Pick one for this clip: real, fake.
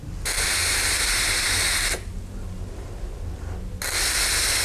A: real